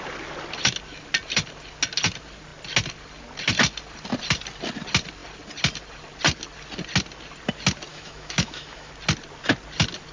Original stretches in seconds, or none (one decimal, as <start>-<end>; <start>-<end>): 0.0-7.9; 8.9-10.1